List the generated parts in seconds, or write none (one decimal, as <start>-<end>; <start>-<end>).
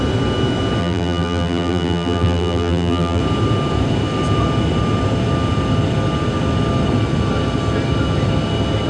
0.8-3.2